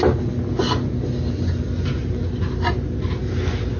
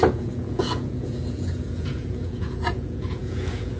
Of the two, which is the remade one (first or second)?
second